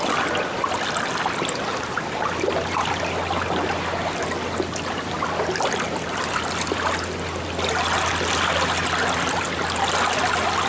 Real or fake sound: real